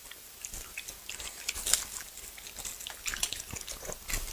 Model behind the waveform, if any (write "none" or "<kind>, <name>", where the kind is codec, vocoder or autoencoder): none